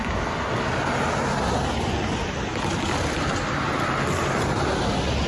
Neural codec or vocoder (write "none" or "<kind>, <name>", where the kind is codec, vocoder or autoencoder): none